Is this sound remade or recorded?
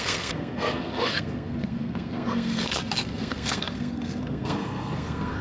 remade